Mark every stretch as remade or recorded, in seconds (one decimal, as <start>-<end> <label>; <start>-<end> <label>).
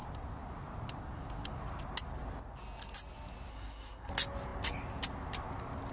0.0-3.5 recorded; 3.5-4.1 remade; 4.1-5.9 recorded